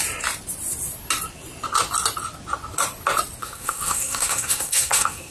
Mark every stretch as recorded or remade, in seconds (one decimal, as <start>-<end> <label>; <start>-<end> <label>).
0.0-3.4 recorded; 3.4-5.3 remade